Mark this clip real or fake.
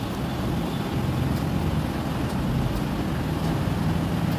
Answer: real